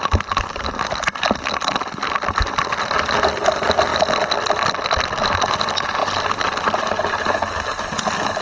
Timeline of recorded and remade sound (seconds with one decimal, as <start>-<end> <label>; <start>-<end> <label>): 0.0-8.4 recorded